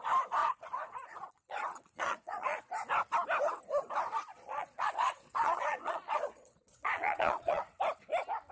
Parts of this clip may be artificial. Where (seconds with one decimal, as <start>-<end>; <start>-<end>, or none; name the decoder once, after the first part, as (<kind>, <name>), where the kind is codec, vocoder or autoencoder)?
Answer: 0.4-2.7 (vocoder, Vocos); 4.3-7.6